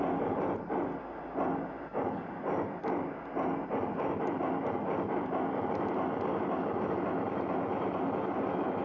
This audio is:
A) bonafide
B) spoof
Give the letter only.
A